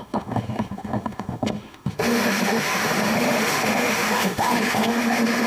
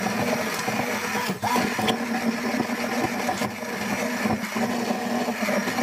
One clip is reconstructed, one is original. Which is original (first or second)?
second